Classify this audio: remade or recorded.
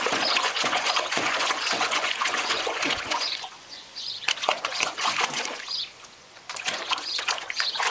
remade